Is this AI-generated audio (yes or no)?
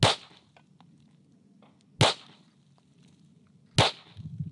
no